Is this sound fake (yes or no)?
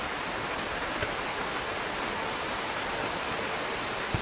no